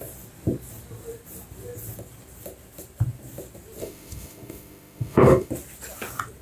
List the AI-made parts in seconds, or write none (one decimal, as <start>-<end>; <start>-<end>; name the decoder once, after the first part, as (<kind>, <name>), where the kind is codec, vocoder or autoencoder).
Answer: 3.8-5.5 (autoencoder, DAC-VAE)